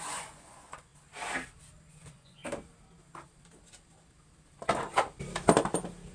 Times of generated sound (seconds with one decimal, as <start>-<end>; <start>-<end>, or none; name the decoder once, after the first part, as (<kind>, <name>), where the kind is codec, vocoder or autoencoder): 0.0-0.9 (vocoder, Vocos); 1.9-2.4